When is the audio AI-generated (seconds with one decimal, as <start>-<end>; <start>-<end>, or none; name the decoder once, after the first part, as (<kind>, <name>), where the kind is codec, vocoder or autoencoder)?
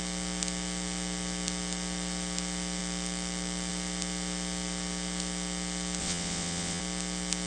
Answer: 6.0-6.8 (vocoder, WaveNeXt)